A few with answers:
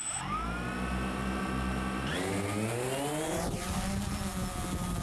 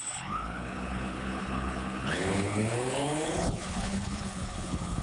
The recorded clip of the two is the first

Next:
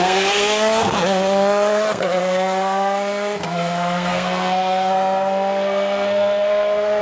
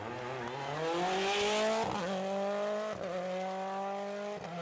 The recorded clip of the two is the second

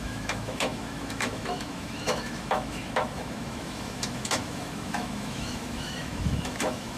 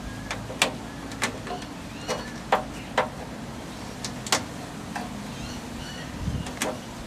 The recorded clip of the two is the second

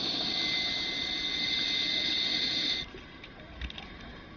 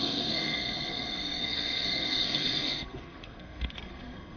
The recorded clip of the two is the first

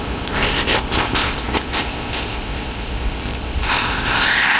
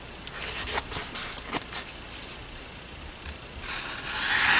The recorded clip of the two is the second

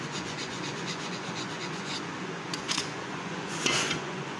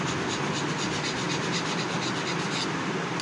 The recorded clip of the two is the second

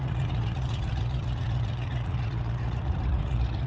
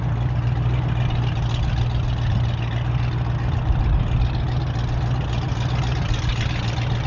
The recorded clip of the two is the second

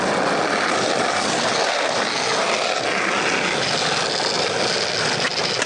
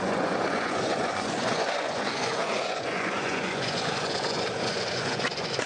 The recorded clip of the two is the first